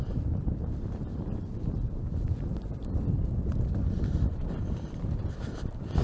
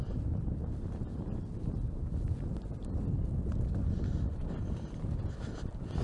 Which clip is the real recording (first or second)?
second